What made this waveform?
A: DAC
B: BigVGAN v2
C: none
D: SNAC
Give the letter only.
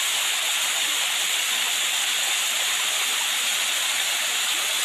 C